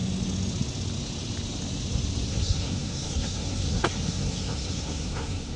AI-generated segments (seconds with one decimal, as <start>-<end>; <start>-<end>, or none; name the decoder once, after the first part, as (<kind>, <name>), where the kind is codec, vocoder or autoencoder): 2.3-5.6 (codec, SNAC)